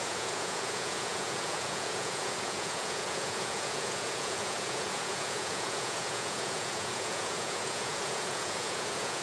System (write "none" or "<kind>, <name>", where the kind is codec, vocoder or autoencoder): vocoder, Vocos